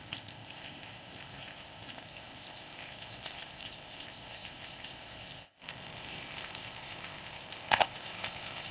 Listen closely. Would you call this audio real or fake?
fake